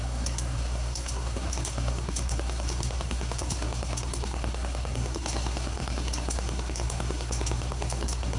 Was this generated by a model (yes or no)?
yes